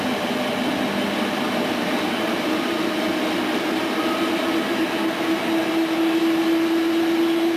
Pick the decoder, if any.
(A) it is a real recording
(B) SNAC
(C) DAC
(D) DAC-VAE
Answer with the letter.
A